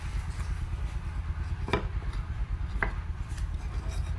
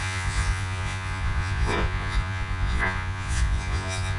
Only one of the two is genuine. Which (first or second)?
first